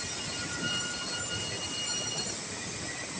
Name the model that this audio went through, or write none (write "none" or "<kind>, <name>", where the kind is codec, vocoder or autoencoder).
none